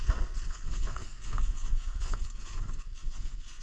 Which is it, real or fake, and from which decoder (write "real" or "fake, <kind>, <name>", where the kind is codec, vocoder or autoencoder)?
fake, codec, SNAC